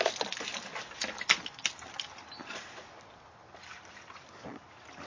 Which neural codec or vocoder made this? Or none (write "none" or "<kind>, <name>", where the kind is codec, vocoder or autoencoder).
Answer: none